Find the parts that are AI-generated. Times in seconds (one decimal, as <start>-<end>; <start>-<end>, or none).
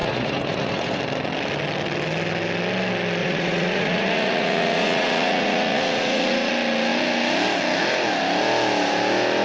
0.0-1.0; 3.2-6.5